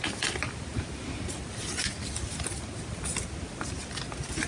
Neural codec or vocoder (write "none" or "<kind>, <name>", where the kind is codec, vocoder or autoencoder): none